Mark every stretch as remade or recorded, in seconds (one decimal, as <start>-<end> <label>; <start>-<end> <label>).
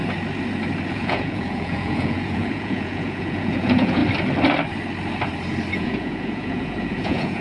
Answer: 0.0-0.9 recorded; 0.9-4.0 remade; 4.0-5.7 recorded; 5.7-7.4 remade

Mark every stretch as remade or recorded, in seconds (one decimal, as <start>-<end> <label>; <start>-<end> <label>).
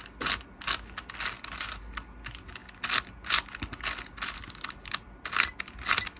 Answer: 0.0-6.2 recorded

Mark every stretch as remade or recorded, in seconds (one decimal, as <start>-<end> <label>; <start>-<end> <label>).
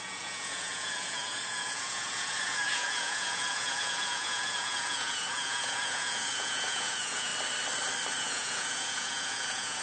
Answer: 0.0-7.3 remade; 7.3-8.1 recorded; 8.1-9.8 remade